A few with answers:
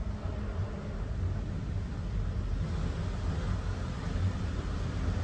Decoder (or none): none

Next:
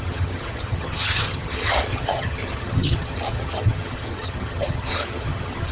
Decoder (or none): vocoder, HiFi-GAN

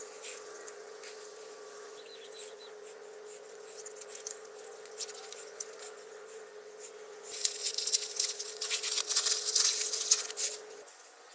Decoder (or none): vocoder, Vocos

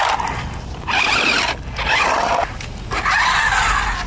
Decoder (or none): none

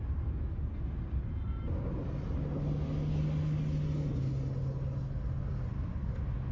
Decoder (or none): none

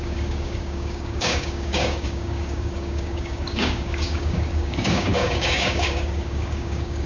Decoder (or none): codec, DAC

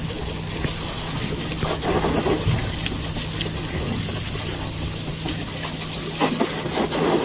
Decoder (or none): none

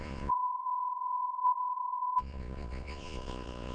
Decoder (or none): vocoder, Vocos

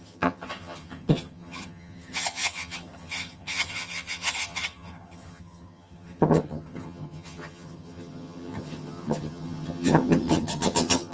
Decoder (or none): vocoder, HiFi-GAN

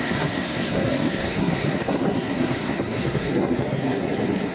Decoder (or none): codec, SNAC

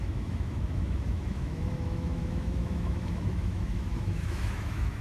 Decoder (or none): autoencoder, DAC-VAE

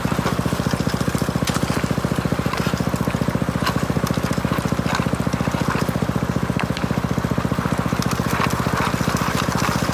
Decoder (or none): none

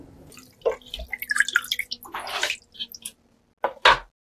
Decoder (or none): none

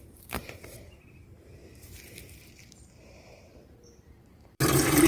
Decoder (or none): vocoder, BigVGAN v2